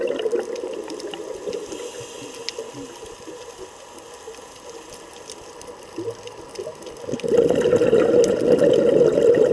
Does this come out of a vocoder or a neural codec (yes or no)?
no